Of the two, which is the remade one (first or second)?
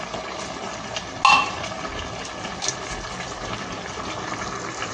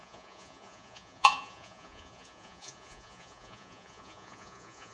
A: second